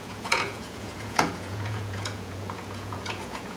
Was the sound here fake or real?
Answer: fake